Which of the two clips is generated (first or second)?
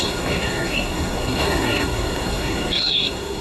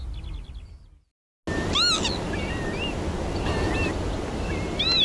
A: first